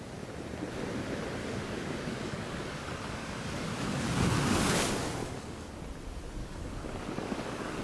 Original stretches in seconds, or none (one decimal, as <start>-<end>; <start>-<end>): 0.0-1.4; 4.8-5.2; 5.7-6.4